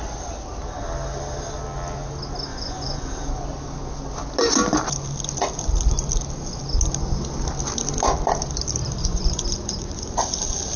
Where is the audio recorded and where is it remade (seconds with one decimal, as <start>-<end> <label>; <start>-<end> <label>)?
0.0-2.5 recorded; 2.5-3.1 remade; 3.1-9.0 recorded; 9.0-10.2 remade; 10.2-10.8 recorded